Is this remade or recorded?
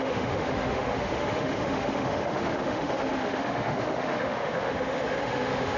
remade